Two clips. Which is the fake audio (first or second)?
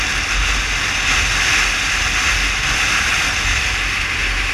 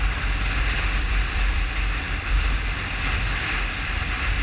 second